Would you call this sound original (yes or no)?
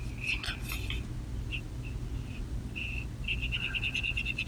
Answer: yes